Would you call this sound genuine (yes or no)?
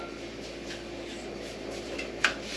yes